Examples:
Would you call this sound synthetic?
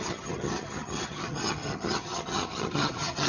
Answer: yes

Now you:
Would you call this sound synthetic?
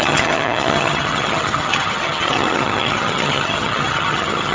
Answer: yes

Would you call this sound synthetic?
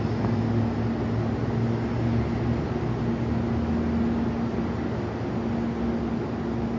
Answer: no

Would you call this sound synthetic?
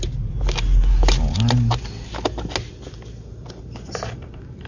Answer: no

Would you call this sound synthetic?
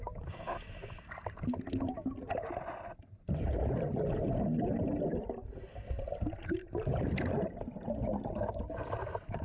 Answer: no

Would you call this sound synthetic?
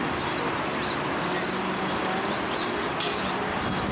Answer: no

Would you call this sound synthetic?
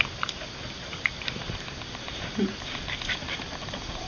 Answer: no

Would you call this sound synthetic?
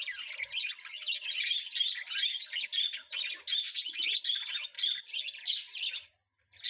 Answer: no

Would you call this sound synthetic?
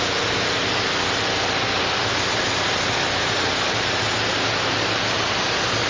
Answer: no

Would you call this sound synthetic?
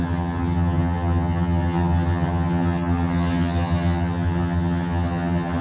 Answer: yes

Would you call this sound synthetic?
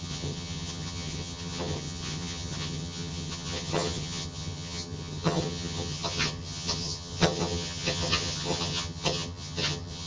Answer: yes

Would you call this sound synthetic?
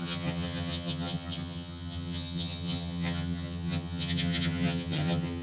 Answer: yes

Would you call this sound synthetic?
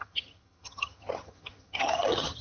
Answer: yes